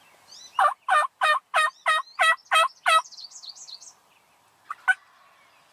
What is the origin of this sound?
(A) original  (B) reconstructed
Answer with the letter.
A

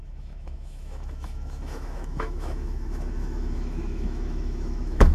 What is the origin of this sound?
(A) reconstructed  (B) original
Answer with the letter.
A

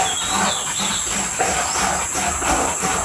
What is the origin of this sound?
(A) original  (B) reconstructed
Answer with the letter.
A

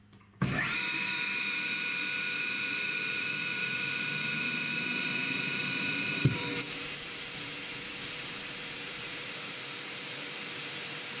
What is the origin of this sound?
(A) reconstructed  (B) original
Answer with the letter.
A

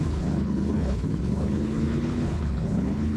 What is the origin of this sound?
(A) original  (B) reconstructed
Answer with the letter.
B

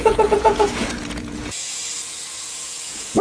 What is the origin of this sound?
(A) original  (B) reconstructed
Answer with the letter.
B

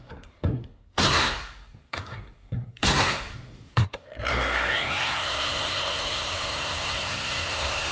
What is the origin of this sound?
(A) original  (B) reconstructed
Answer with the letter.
B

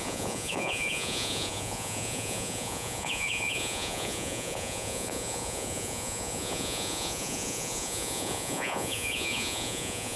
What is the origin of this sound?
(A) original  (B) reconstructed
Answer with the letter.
B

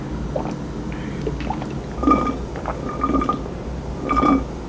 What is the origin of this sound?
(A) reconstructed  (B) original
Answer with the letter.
B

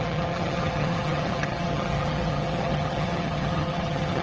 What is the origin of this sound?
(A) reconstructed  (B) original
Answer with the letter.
A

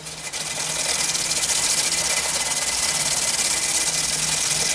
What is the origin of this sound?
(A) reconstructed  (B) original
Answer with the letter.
B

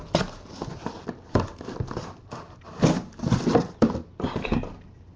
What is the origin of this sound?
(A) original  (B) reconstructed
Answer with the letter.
A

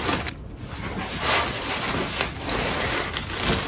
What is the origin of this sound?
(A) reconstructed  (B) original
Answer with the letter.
B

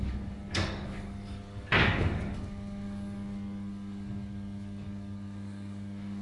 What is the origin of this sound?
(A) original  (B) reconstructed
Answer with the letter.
B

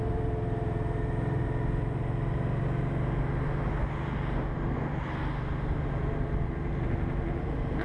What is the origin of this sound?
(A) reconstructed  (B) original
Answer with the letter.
B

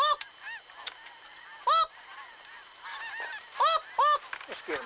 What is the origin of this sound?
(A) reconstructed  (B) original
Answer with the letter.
B